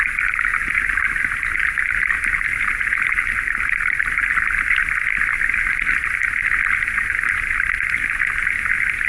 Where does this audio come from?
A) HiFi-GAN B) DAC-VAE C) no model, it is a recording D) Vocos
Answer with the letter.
C